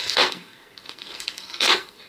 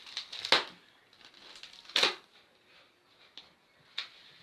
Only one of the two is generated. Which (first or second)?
first